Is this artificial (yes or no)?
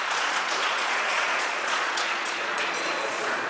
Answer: yes